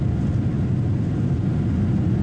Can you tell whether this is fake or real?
real